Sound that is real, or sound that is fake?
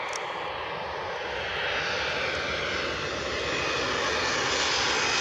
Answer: real